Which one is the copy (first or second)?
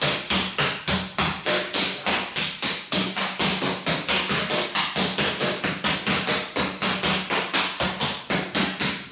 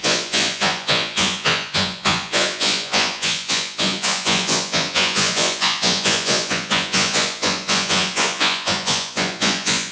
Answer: second